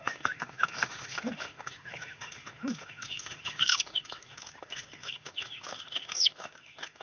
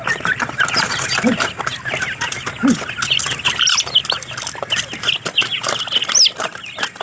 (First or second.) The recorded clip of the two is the second